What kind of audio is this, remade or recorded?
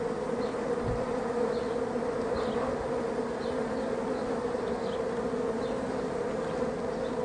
recorded